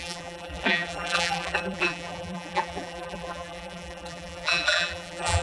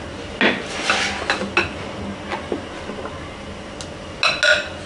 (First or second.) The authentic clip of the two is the second